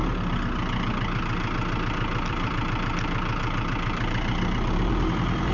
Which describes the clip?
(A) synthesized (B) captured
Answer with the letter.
A